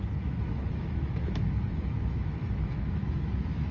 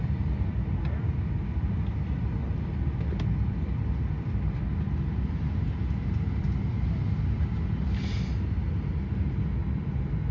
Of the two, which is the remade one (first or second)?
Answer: first